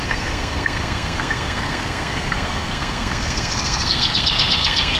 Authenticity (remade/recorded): remade